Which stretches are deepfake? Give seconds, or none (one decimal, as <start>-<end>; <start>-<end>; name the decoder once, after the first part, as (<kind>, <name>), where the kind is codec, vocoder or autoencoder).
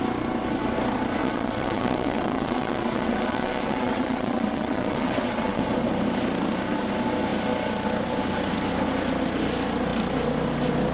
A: 1.2-5.6 (vocoder, WaveNeXt)